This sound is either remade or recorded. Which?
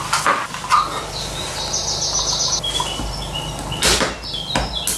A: recorded